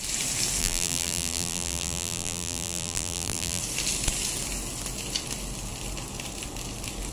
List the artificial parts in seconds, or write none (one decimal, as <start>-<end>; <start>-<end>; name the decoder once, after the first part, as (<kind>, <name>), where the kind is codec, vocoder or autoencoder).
0.6-3.6 (vocoder, BigVGAN v2)